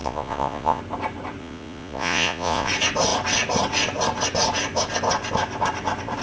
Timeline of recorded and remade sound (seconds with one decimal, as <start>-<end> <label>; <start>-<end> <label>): 0.0-0.8 remade; 0.8-1.4 recorded; 1.4-2.7 remade; 2.7-6.2 recorded